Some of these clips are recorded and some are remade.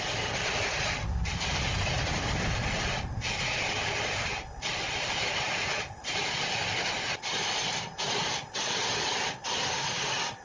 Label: recorded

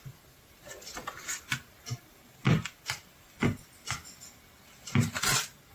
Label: recorded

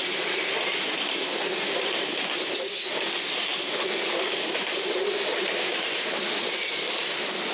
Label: recorded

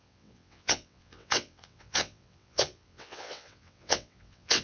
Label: remade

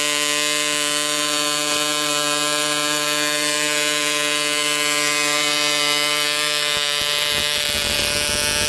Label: recorded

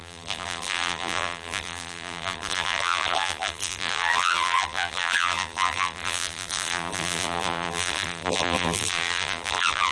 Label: remade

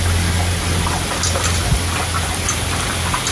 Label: recorded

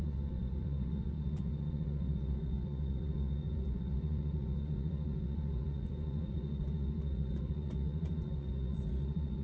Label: remade